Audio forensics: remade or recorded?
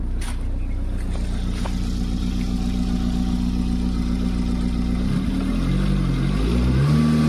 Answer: recorded